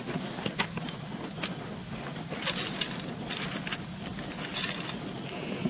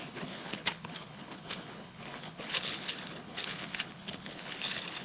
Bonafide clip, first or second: first